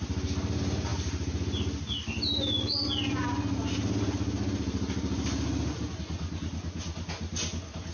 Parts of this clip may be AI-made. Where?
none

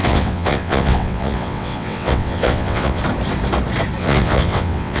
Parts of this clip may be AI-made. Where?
0.0-3.0 (vocoder, WaveNeXt); 4.0-5.0

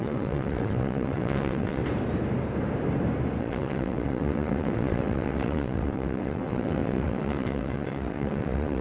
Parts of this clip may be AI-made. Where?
0.0-1.8 (vocoder, WaveNeXt); 3.4-8.8

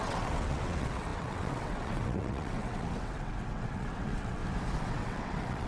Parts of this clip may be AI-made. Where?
0.0-4.4 (vocoder, WaveNeXt); 4.9-5.7

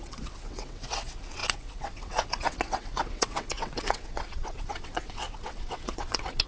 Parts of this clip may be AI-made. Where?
0.0-6.5 (vocoder, WaveNeXt)